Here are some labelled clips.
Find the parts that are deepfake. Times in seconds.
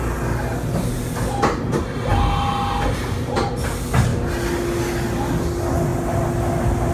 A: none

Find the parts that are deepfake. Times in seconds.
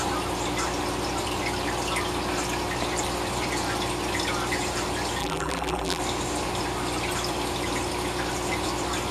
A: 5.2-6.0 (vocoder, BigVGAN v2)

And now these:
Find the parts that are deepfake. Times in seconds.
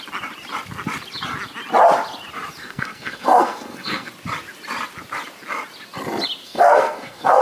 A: 2.6-4.1 (codec, SNAC); 6.4-7.4